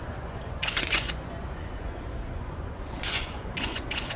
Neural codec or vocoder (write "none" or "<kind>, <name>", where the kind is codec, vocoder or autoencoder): vocoder, Vocos